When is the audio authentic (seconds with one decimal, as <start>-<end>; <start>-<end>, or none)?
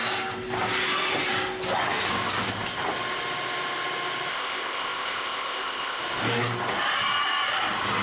0.0-4.3; 6.0-8.0